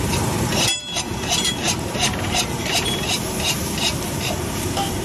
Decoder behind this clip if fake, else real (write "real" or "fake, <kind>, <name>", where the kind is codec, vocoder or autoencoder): fake, vocoder, BigVGAN v2